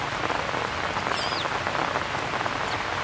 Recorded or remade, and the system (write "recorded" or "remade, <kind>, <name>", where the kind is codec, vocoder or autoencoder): recorded